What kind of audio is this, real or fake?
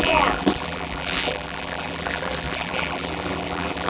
fake